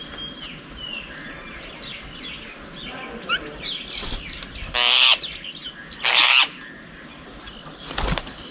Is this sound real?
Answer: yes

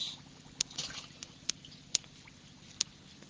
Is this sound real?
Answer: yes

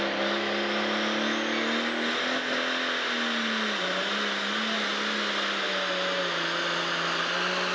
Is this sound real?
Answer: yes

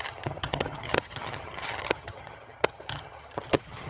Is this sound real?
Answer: no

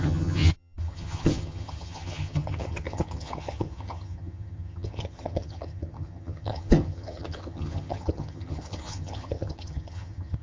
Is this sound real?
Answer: no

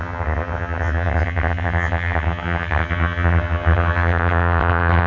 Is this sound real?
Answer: no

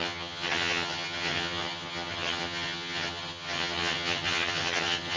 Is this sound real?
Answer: no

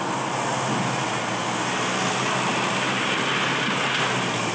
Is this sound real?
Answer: yes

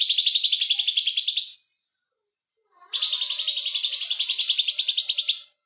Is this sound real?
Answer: yes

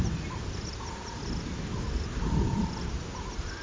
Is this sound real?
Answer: yes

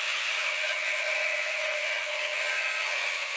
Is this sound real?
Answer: no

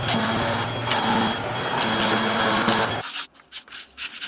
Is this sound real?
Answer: yes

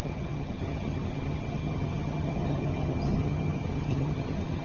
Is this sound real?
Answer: no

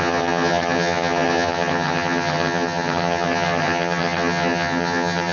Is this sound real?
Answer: no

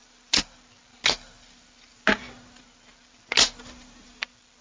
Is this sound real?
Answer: yes